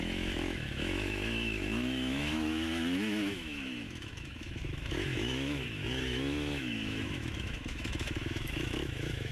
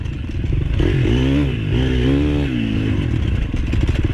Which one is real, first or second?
second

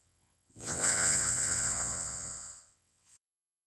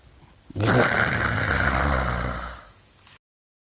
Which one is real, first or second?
second